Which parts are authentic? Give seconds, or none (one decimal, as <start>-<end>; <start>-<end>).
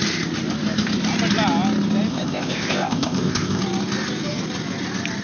0.0-2.1; 3.6-5.2